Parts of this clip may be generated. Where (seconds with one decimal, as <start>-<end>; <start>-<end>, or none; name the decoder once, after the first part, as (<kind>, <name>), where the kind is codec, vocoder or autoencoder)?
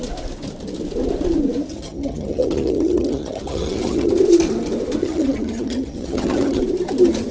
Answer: 1.7-4.1 (vocoder, HiFi-GAN); 5.0-6.6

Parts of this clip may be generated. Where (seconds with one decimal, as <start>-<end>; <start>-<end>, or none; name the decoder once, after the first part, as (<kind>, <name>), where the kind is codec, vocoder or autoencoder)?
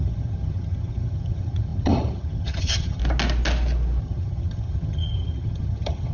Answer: 0.0-3.0 (vocoder, HiFi-GAN); 4.0-6.1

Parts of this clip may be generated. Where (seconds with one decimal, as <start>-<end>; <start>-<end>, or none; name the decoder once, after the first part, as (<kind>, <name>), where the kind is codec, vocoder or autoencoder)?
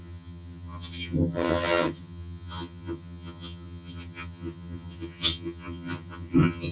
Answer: 0.0-6.7 (vocoder, HiFi-GAN)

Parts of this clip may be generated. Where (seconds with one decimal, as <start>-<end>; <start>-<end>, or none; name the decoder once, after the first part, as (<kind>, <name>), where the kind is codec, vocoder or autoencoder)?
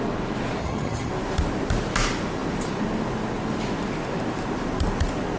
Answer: 0.6-1.1 (vocoder, HiFi-GAN)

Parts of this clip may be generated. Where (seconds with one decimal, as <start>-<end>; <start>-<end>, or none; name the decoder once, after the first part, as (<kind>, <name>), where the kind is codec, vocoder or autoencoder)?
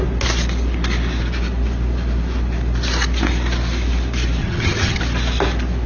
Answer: 4.4-5.0 (vocoder, HiFi-GAN)